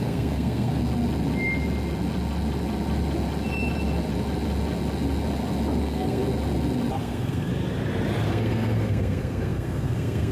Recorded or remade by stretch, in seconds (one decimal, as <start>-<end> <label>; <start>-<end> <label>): 0.0-0.8 remade; 0.8-5.8 recorded; 5.8-6.2 remade; 6.2-7.0 recorded; 7.0-7.5 remade; 7.5-8.3 recorded; 8.3-10.3 remade